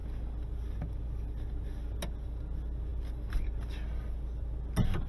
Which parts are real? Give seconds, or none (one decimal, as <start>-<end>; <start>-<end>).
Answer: 0.0-5.1